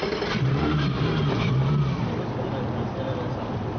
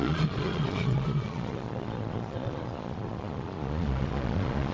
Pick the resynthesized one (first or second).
second